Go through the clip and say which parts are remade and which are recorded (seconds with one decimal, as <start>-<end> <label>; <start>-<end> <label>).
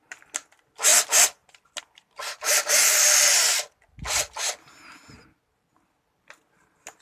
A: 0.0-7.0 recorded